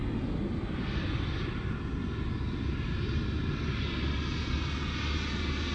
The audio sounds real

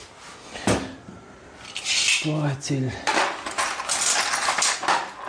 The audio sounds real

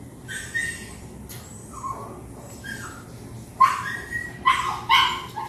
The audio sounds real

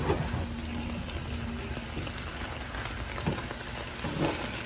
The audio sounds real